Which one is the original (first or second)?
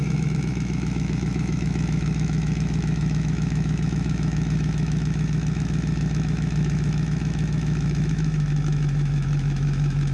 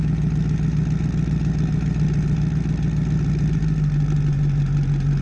second